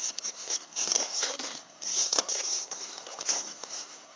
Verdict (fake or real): fake